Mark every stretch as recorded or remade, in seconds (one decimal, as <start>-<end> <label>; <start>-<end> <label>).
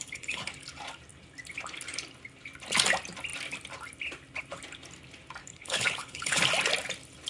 0.0-0.5 remade; 0.5-5.4 recorded; 5.4-6.4 remade; 6.4-7.3 recorded